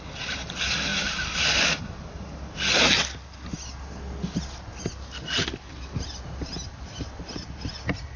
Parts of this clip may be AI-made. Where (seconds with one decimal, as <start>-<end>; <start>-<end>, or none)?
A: none